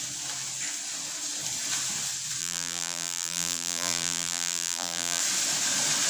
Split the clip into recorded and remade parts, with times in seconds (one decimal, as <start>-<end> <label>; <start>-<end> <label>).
0.0-2.4 recorded; 2.4-5.2 remade; 5.2-6.1 recorded